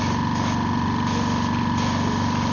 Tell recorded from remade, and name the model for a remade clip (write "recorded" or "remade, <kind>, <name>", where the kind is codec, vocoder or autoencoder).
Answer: recorded